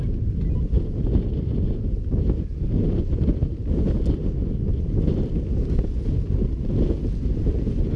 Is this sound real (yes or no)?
yes